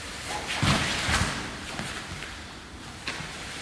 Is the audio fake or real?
real